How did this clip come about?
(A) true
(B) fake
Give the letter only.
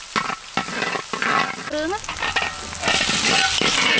A